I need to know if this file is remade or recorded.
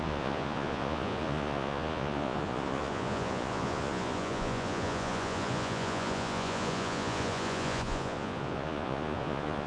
remade